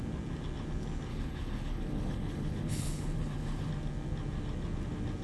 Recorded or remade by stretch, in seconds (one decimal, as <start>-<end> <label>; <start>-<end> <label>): 0.0-1.1 recorded; 1.1-3.7 remade; 3.7-5.2 recorded